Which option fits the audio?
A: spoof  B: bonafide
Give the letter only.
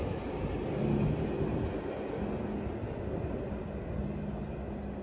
B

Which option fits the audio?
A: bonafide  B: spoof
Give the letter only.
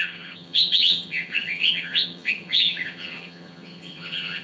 B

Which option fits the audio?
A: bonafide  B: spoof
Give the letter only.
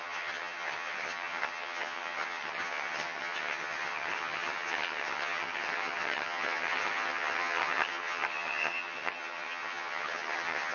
B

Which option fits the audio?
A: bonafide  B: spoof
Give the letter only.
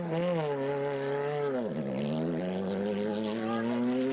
A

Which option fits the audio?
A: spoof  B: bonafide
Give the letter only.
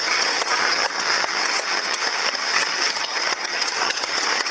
A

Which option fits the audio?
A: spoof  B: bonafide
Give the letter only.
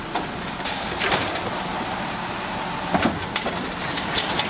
B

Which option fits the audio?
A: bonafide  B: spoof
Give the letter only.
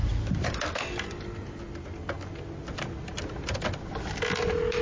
A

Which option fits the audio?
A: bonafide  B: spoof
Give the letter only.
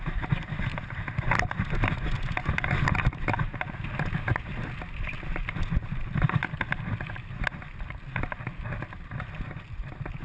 A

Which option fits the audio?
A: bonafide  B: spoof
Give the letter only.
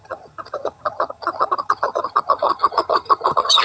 B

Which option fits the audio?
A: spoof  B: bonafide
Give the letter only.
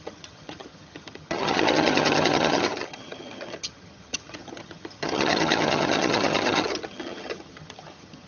A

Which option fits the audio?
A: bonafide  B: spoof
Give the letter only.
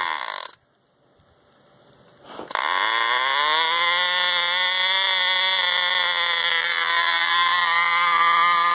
A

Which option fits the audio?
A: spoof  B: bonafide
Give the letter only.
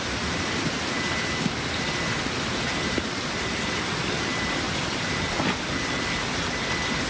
B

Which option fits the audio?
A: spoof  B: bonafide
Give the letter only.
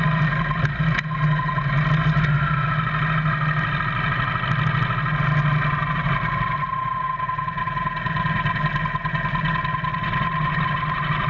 B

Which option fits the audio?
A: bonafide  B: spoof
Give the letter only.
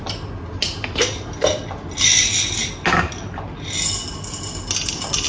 A